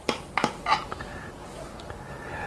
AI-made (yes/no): no